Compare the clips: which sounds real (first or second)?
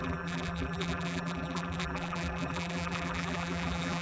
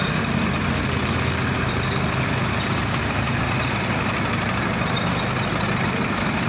second